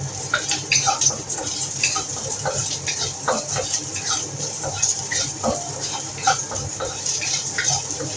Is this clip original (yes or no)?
no